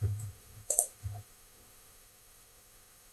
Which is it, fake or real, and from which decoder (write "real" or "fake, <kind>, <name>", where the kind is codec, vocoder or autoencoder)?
fake, autoencoder, DAC-VAE